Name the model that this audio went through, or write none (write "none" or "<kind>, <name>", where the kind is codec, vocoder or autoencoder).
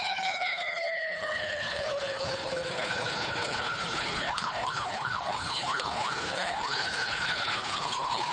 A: codec, HILCodec